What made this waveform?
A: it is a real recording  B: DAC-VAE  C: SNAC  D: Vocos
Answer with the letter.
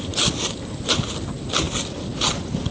A